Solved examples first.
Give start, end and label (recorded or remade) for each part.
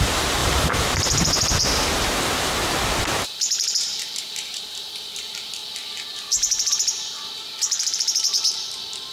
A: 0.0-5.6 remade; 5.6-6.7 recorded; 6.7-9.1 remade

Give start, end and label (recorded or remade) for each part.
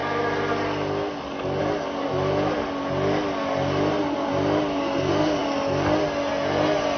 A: 0.0-7.0 recorded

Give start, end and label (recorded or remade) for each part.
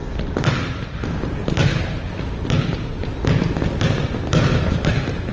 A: 0.0-5.3 recorded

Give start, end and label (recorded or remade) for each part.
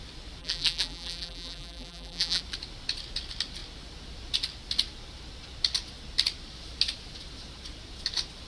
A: 0.0-0.4 recorded; 0.4-2.4 remade; 2.4-8.5 recorded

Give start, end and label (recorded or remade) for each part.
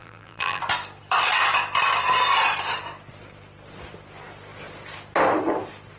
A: 0.0-0.6 remade; 0.6-6.0 recorded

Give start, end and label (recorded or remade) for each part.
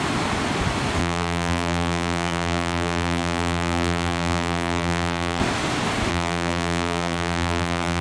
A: 0.0-1.0 recorded; 1.0-5.4 remade; 5.4-6.1 recorded; 6.1-8.0 remade